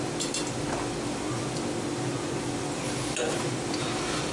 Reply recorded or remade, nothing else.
remade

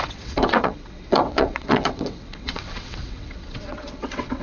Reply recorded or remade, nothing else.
remade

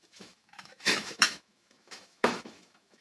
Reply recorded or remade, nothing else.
remade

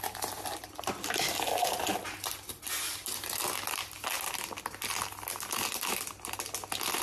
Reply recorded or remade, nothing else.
recorded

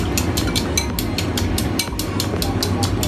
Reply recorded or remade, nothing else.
recorded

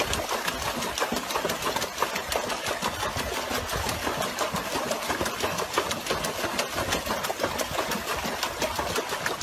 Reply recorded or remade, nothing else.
recorded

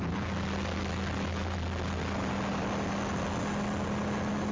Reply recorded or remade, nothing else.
recorded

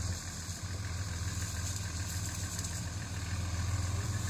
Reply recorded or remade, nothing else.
remade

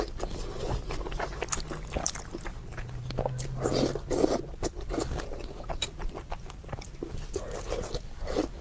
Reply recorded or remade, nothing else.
recorded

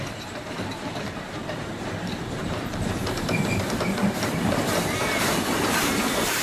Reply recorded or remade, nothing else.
remade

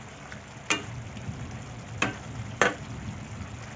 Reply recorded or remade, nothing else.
recorded